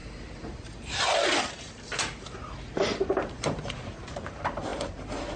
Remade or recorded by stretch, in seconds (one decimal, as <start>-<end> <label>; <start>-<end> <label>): 0.0-5.4 remade